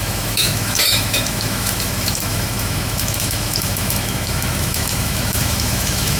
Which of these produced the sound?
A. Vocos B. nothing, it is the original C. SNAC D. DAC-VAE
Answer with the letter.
D